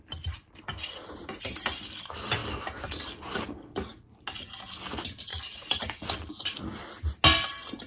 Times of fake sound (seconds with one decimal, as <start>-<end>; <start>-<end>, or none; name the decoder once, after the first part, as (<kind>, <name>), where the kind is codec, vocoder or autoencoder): none